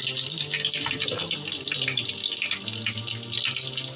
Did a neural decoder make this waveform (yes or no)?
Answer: no